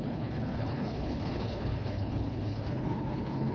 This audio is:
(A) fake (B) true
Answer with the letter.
A